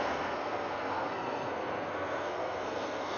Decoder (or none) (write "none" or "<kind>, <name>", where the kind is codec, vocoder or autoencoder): codec, SNAC